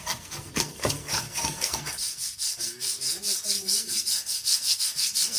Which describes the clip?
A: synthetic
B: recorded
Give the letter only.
A